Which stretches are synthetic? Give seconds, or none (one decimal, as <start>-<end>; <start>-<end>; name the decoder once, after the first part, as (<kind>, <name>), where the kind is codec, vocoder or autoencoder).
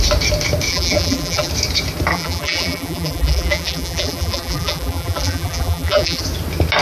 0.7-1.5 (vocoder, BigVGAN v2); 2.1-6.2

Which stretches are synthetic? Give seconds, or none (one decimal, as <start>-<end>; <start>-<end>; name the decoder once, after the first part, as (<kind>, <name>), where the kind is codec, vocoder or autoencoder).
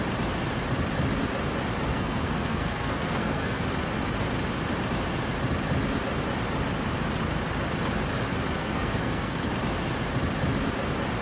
1.9-3.6 (codec, SNAC); 8.6-9.5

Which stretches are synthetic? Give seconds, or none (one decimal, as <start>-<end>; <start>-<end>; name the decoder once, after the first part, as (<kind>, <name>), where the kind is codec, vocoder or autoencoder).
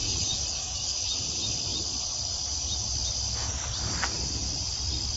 0.0-1.0 (codec, DAC)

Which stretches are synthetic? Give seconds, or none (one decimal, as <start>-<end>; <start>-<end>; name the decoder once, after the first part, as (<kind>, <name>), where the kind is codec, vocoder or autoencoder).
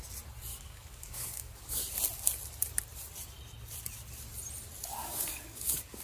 0.5-1.9 (codec, DAC); 5.0-6.0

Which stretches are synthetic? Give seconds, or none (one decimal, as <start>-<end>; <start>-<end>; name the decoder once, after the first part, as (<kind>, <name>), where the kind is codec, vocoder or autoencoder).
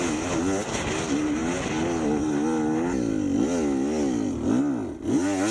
none